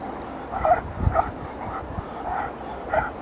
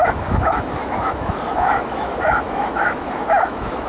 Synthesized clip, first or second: second